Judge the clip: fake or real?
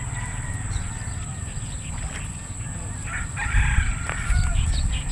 fake